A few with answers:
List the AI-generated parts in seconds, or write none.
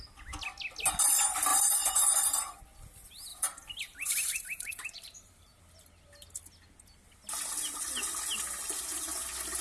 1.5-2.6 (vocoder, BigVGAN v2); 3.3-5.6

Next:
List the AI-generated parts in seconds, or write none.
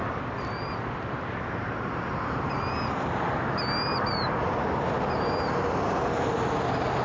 3.9-4.7 (vocoder, BigVGAN v2)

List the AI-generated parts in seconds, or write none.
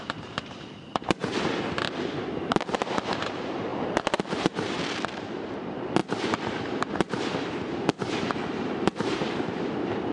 0.0-1.2 (vocoder, BigVGAN v2); 2.5-3.7; 4.2-10.1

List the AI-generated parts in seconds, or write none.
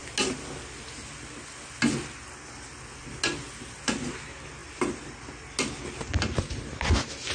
none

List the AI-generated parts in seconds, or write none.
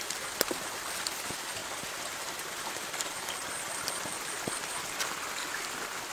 1.6-5.3 (vocoder, BigVGAN v2)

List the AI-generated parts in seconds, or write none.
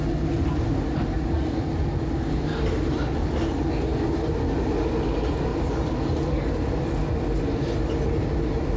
none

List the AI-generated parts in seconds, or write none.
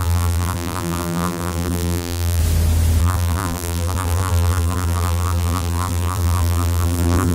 0.0-2.4 (vocoder, BigVGAN v2); 3.0-7.3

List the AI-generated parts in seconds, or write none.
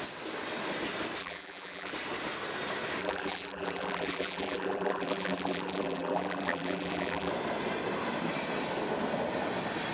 1.2-1.9 (vocoder, BigVGAN v2); 3.0-7.3